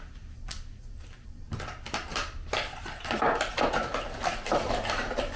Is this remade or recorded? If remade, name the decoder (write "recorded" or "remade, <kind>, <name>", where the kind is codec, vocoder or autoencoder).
remade, vocoder, BigVGAN v2